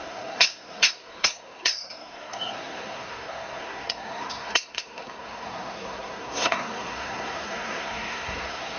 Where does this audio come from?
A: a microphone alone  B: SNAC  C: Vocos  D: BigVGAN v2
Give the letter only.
B